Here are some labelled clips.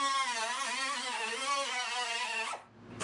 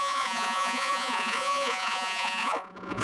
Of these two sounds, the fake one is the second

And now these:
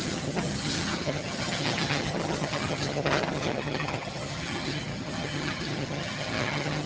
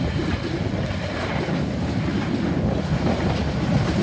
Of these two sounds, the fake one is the first